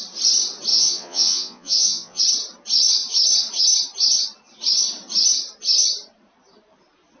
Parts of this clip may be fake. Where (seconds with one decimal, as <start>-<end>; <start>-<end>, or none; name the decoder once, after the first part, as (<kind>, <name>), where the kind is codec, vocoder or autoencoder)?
0.7-2.2 (vocoder, Vocos)